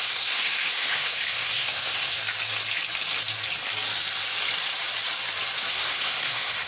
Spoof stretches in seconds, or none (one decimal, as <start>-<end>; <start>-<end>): 0.0-2.2; 5.7-6.7